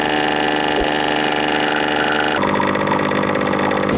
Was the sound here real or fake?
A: real